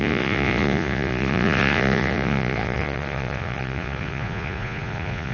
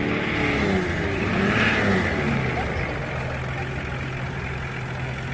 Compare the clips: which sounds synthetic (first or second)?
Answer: first